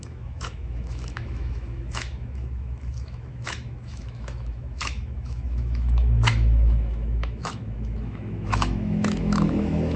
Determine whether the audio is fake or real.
fake